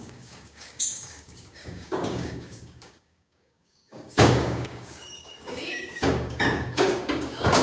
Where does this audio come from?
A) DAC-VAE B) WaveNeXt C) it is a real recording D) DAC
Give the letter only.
D